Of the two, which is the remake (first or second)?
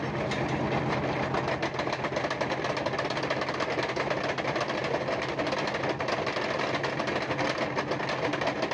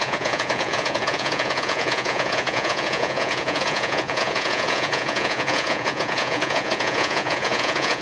second